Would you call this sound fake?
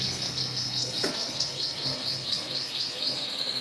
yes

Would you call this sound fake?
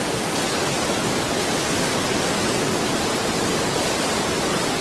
no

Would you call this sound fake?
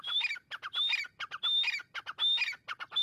no